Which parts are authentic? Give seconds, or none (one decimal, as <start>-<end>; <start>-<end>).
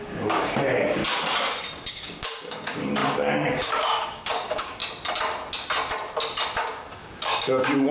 1.0-1.9; 4.8-6.6